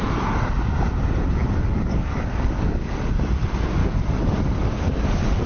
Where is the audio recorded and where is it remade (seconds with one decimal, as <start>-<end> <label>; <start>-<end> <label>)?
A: 0.0-1.4 recorded; 1.4-3.1 remade; 3.1-3.8 recorded; 3.8-5.0 remade; 5.0-5.5 recorded